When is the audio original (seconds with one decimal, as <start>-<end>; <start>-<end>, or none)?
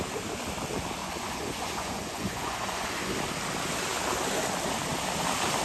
0.0-1.0; 3.1-5.6